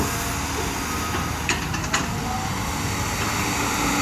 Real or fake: real